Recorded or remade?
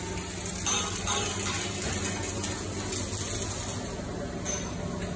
recorded